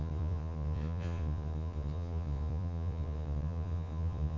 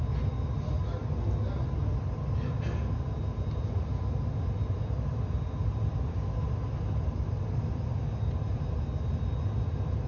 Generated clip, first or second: first